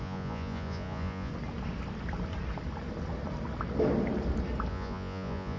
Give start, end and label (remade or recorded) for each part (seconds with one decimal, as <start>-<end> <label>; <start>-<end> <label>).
0.0-1.3 remade; 1.3-4.7 recorded; 4.7-5.6 remade